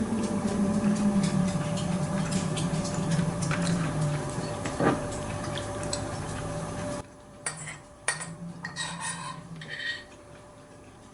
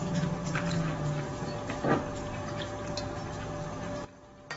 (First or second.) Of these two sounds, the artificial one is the first